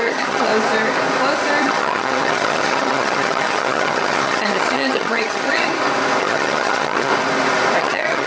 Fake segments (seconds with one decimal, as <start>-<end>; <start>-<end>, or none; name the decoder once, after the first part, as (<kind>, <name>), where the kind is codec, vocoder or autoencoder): 0.0-0.5 (vocoder, HiFi-GAN); 1.6-5.7; 6.2-7.1; 7.8-8.3

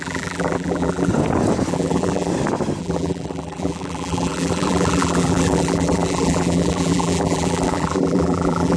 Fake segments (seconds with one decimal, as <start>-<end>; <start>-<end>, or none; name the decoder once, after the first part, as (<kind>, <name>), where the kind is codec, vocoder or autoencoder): 0.0-1.1 (vocoder, BigVGAN v2); 1.7-2.3; 2.8-8.8

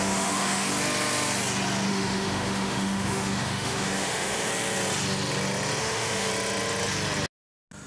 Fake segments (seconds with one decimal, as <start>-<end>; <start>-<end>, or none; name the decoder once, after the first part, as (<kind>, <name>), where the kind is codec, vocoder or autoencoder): 0.0-0.7 (autoencoder, DAC-VAE); 1.9-4.5; 5.8-6.3

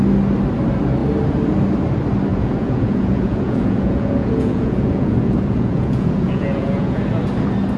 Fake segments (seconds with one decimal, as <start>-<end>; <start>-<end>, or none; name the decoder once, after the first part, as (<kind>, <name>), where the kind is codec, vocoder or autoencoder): 2.3-7.0 (vocoder, Vocos)

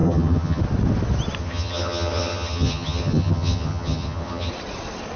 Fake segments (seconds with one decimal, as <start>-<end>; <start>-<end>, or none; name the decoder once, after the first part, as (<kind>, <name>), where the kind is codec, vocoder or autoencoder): 0.0-0.6 (vocoder, HiFi-GAN); 1.4-4.5

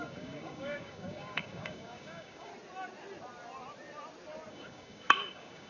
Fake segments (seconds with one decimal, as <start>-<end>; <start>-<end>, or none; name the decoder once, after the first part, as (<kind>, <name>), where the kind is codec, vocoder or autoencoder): 0.0-2.5 (codec, DAC); 4.5-5.7

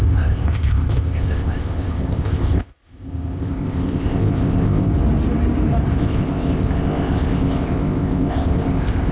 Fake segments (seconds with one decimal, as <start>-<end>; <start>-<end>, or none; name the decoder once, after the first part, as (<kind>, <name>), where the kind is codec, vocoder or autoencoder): 0.0-4.9 (codec, ZipCodec); 5.9-9.1

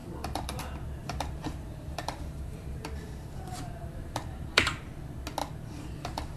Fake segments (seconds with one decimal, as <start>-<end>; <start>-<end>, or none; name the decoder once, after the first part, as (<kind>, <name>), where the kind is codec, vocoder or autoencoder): 0.0-0.6 (vocoder, BigVGAN v2); 1.0-4.8; 5.4-6.4